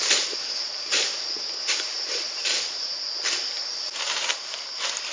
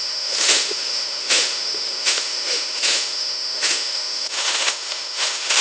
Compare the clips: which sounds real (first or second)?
first